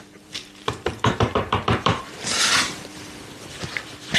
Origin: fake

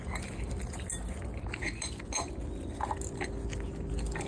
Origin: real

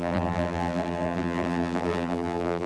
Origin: fake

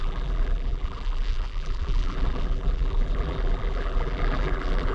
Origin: fake